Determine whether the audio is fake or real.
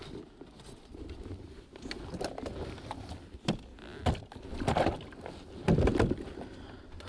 real